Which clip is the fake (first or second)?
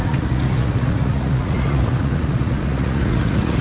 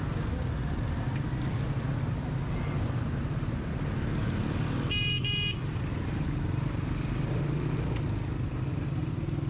first